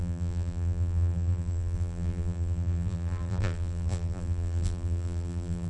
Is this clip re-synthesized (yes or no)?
yes